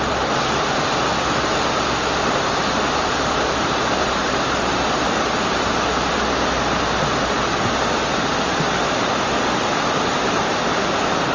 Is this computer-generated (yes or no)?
no